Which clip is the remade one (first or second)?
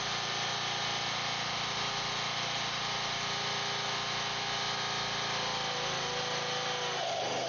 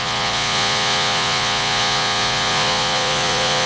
second